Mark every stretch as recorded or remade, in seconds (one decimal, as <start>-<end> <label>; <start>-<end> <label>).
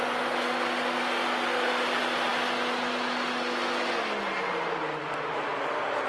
0.0-6.1 recorded